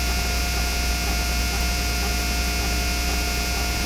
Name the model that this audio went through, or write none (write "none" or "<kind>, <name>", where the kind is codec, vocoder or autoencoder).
none